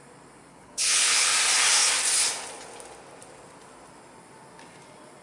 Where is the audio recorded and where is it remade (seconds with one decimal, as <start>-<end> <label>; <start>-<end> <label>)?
0.0-0.5 recorded; 0.5-1.3 remade; 1.3-5.2 recorded